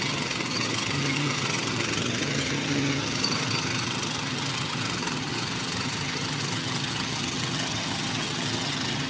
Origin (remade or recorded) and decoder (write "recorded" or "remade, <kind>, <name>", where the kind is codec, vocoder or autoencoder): remade, vocoder, HiFi-GAN